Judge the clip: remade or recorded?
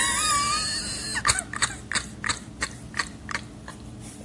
recorded